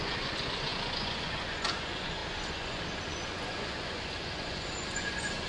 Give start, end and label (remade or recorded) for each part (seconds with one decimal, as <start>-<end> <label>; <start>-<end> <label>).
0.0-5.5 remade